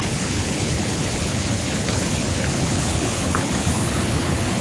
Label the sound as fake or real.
fake